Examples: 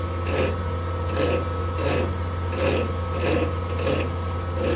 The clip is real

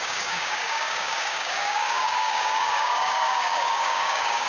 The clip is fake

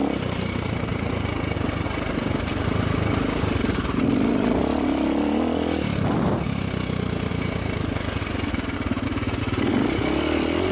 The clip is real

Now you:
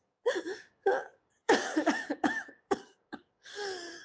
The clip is fake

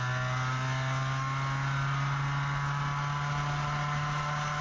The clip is real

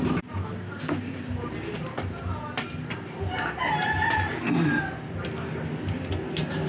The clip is real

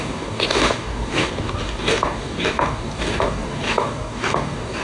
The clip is fake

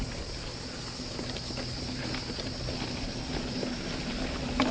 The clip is real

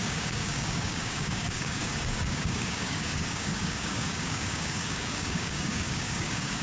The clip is fake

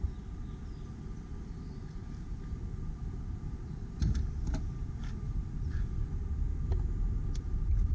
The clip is real